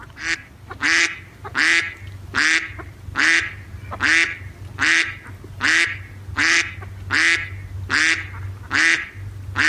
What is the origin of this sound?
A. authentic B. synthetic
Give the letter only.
A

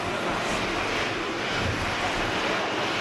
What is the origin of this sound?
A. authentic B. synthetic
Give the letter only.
A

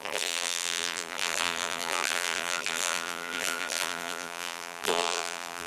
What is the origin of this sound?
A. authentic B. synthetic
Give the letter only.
B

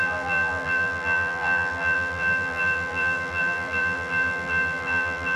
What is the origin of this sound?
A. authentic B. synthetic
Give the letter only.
B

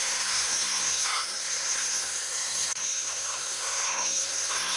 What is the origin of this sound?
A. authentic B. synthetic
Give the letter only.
B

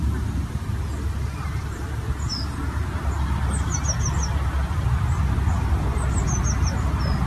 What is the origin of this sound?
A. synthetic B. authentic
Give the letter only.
B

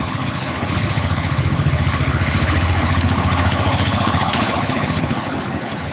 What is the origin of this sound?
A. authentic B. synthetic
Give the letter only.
B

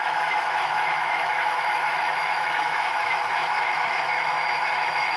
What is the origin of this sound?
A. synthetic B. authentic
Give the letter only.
A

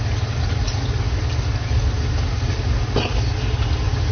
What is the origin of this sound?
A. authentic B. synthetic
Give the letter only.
A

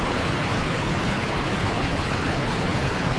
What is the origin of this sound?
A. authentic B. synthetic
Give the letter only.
B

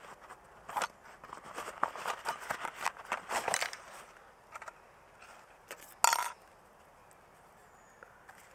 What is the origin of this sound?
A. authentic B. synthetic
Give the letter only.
A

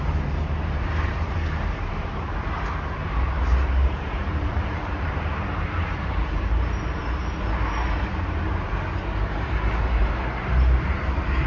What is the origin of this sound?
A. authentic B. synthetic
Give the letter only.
B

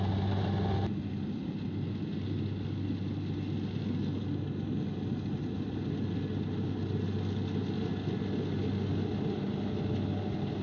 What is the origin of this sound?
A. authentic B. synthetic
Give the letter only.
A